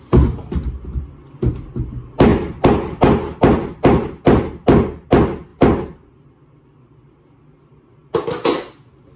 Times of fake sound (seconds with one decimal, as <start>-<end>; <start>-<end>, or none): none